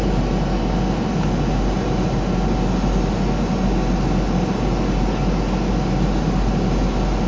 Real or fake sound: real